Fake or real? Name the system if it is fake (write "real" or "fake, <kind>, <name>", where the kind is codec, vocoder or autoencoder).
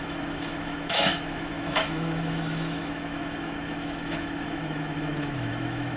fake, autoencoder, DAC-VAE